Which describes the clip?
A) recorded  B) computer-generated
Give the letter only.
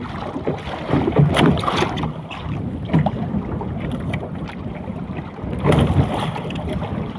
A